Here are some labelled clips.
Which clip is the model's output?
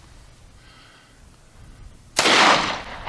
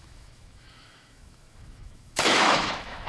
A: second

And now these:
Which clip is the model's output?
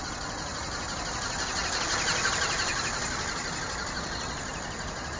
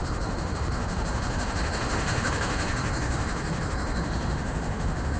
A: second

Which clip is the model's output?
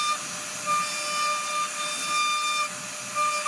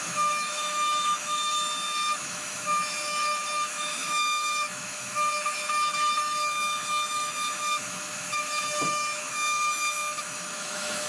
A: second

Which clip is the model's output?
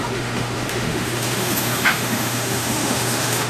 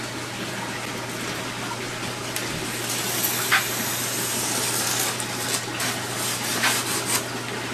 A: first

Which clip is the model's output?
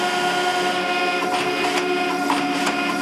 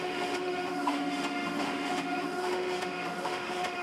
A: second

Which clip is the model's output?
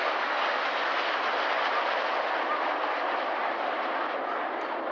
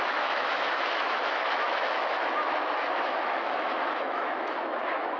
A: second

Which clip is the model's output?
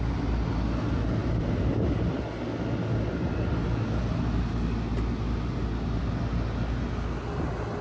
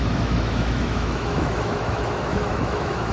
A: second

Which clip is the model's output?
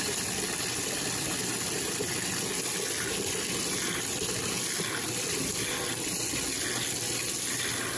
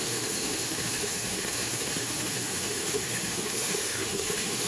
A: second